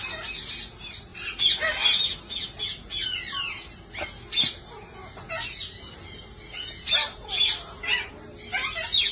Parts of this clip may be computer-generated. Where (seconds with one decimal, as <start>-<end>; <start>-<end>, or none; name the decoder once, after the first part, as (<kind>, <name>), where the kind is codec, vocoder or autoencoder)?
none